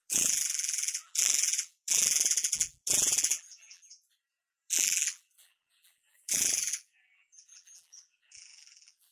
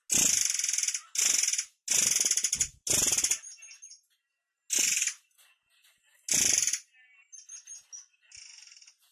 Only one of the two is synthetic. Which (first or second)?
first